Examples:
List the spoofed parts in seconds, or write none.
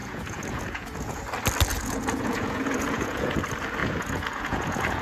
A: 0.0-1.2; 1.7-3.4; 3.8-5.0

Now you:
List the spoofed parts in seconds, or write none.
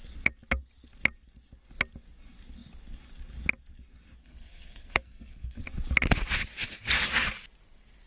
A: 4.2-5.6